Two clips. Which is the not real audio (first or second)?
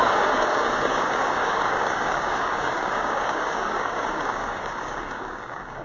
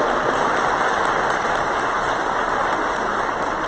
first